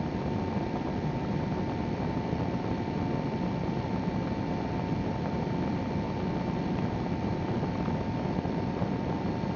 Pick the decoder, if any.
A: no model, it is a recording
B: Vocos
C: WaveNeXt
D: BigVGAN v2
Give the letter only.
D